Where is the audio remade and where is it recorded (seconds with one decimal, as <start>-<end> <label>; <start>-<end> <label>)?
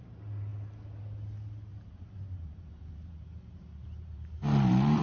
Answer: 0.0-1.7 recorded; 1.7-5.0 remade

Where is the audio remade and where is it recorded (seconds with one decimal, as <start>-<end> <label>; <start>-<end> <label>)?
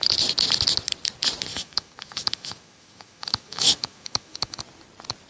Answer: 0.0-1.5 recorded; 1.5-4.6 remade; 4.6-5.3 recorded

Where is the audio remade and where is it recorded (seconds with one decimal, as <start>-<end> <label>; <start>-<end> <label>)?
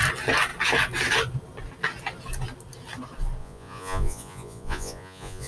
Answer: 0.0-3.4 recorded; 3.4-5.5 remade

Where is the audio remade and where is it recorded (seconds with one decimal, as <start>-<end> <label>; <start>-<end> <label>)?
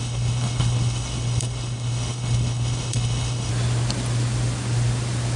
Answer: 0.0-3.5 remade; 3.5-5.4 recorded